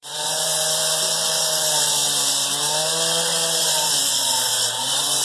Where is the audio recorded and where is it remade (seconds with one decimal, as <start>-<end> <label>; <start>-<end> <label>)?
0.0-0.5 remade; 0.5-3.6 recorded; 3.6-5.2 remade